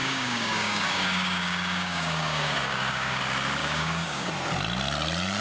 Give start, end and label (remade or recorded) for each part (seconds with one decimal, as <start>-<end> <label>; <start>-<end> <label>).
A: 0.0-3.2 remade; 3.2-3.6 recorded; 3.6-4.3 remade; 4.3-5.4 recorded